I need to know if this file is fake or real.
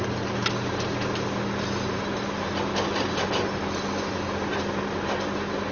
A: real